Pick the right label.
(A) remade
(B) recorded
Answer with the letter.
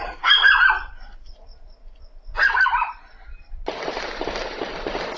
B